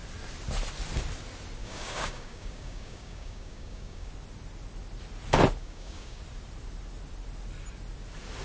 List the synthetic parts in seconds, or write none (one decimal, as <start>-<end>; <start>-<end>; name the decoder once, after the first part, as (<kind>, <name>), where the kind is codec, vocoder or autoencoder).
1.6-4.1 (codec, DAC); 5.6-6.2

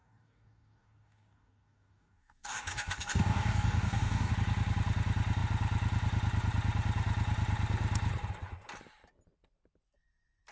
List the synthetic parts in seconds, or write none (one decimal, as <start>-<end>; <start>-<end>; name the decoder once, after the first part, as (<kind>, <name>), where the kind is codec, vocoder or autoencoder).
0.0-4.3 (codec, DAC)

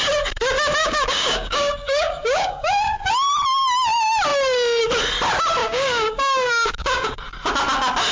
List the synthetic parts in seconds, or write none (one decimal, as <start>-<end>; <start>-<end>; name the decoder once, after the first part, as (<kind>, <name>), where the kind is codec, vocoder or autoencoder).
0.8-3.1 (codec, DAC); 5.6-7.2

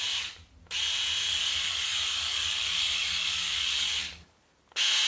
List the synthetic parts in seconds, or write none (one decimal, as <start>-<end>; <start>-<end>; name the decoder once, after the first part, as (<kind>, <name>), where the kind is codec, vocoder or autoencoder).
1.2-4.3 (codec, DAC)